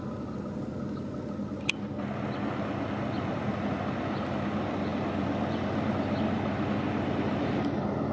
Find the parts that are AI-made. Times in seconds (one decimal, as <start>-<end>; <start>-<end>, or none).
none